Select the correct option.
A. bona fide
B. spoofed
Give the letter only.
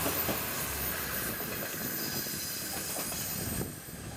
A